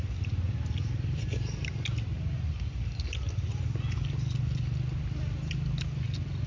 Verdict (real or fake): real